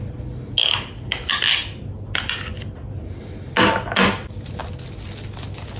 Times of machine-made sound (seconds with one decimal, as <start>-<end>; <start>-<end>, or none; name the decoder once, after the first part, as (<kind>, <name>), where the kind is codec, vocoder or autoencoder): none